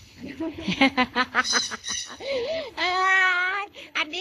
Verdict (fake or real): fake